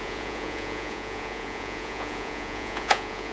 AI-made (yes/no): yes